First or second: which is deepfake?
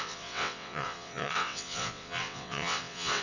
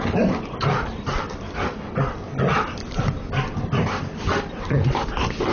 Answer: first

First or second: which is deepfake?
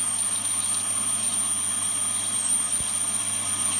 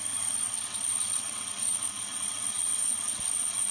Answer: second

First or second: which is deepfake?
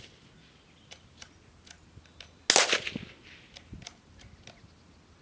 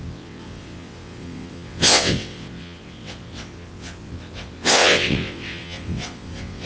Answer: second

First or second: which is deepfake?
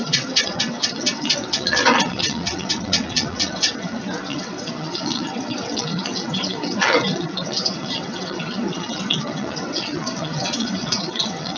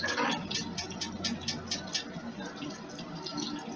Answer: first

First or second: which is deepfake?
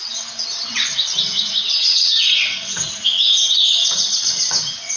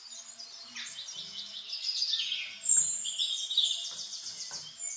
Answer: first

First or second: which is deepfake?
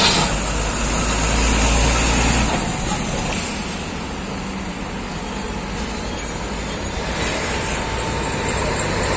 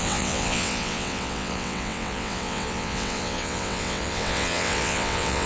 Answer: second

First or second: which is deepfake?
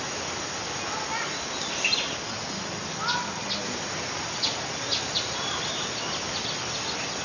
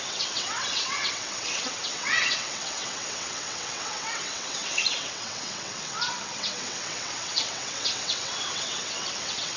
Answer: second